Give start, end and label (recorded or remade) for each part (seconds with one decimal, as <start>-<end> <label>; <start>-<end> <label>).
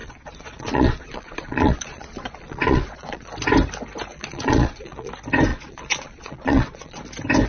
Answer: 0.0-3.3 remade; 3.3-4.1 recorded; 4.1-5.1 remade; 5.1-5.5 recorded; 5.5-7.0 remade; 7.0-7.5 recorded